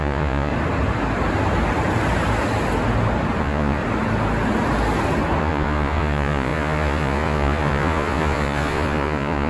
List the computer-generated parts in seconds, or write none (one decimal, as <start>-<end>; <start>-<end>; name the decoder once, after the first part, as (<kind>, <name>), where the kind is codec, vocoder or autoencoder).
0.0-0.5 (vocoder, Vocos); 3.4-3.8; 5.4-9.5